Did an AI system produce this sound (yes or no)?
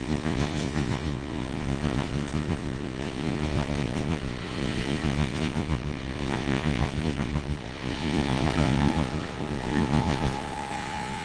yes